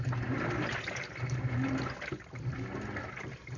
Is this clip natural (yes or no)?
yes